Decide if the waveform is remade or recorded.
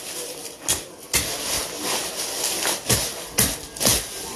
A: recorded